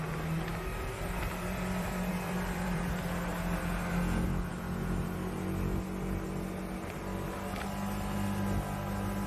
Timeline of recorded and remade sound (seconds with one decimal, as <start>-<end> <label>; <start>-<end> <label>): 0.0-0.5 recorded; 0.5-2.9 remade; 2.9-9.3 recorded